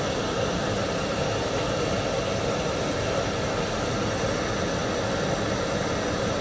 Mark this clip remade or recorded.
recorded